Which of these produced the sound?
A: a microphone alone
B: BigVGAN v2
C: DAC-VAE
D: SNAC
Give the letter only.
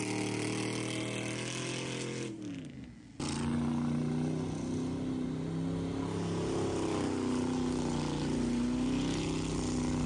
A